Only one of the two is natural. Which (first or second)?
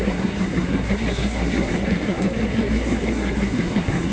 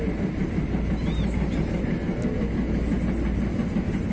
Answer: second